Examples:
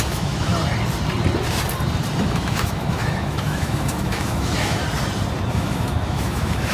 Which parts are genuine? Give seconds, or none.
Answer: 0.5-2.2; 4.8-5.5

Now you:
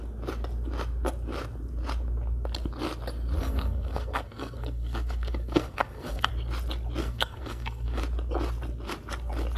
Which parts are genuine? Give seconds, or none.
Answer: 0.0-3.4; 6.3-7.0; 8.0-9.6

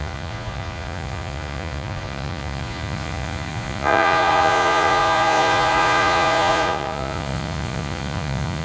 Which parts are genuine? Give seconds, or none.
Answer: none